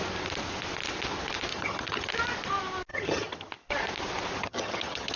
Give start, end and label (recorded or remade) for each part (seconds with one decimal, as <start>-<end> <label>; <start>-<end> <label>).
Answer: 0.0-1.5 recorded; 1.5-2.1 remade; 2.1-2.9 recorded; 2.9-3.5 remade; 3.5-4.4 recorded; 4.4-5.2 remade